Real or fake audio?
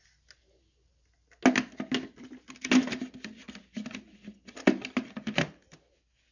real